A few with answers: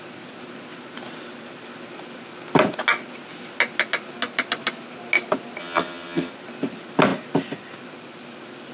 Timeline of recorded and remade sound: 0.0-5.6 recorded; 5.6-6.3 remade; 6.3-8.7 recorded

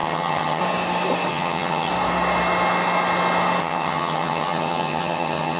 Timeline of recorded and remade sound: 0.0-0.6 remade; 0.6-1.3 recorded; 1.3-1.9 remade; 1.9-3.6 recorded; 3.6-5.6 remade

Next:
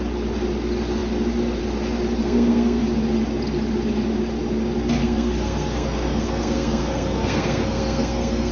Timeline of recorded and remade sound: 0.0-2.2 recorded; 2.2-2.8 remade; 2.8-5.0 recorded; 5.0-8.5 remade